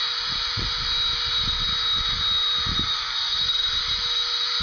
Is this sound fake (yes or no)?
no